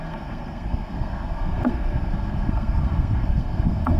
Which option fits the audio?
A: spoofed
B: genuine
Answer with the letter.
A